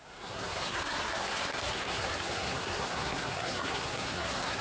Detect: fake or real fake